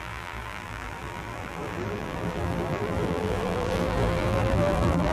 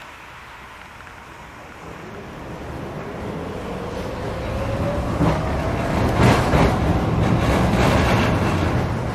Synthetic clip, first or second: first